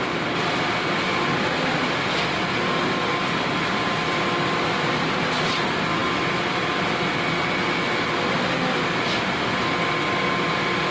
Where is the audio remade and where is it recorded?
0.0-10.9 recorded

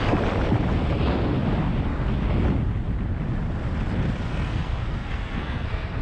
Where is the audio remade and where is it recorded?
0.0-4.3 recorded; 4.3-6.0 remade